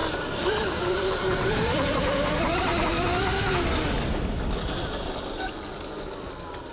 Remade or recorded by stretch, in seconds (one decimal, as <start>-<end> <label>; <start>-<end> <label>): 0.0-0.7 recorded; 0.7-2.7 remade; 2.7-6.7 recorded